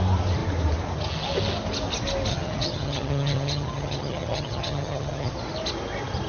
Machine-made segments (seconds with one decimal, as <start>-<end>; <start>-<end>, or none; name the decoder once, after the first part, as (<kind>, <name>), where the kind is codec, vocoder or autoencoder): 2.3-5.3 (vocoder, HiFi-GAN)